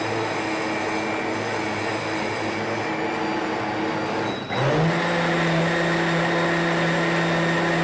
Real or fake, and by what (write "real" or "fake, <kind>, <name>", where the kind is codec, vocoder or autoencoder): real